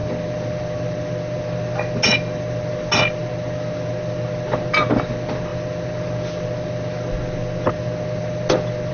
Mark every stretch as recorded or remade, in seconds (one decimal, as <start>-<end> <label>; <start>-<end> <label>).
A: 0.0-8.9 recorded

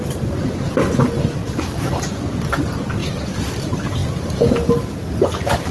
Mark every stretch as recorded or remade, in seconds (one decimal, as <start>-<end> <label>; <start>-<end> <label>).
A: 0.0-1.4 recorded; 1.4-2.2 remade; 2.2-3.0 recorded; 3.0-3.5 remade; 3.5-5.7 recorded

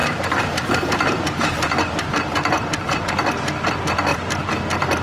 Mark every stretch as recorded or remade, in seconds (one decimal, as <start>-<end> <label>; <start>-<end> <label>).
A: 0.0-3.0 remade; 3.0-4.1 recorded; 4.1-4.6 remade; 4.6-5.0 recorded